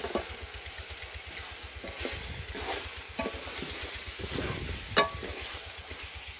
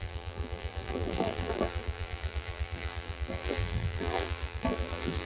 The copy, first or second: second